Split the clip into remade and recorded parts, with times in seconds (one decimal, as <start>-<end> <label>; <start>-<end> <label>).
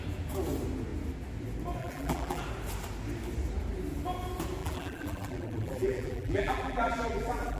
0.0-1.8 recorded; 1.8-2.4 remade; 2.4-4.6 recorded; 4.6-7.6 remade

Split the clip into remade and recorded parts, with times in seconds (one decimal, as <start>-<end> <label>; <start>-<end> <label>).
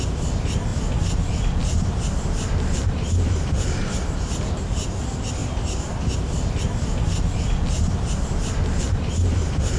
0.0-9.8 recorded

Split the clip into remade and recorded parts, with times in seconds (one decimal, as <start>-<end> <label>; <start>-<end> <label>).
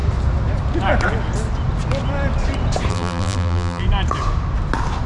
0.0-2.9 recorded; 2.9-3.8 remade; 3.8-5.1 recorded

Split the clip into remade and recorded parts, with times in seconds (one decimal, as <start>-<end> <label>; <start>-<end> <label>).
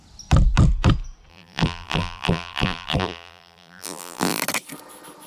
0.0-1.3 recorded; 1.3-4.4 remade; 4.4-5.3 recorded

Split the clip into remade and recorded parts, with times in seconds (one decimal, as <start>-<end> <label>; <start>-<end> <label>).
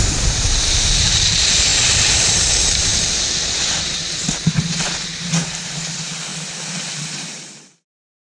0.0-2.9 remade; 2.9-3.7 recorded; 3.7-6.3 remade; 6.3-7.0 recorded; 7.0-8.3 remade